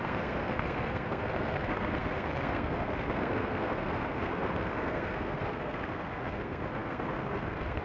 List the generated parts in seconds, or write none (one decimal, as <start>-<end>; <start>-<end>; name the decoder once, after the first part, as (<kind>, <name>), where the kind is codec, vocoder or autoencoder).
0.0-7.8 (codec, SNAC)